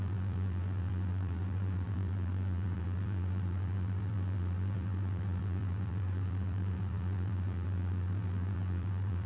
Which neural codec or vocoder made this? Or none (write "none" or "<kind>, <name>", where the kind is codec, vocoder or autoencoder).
vocoder, BigVGAN v2